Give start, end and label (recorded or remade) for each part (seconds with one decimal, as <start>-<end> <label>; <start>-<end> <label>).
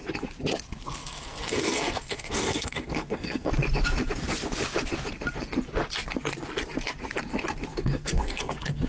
0.0-1.0 recorded; 1.0-3.5 remade; 3.5-7.7 recorded; 7.7-8.9 remade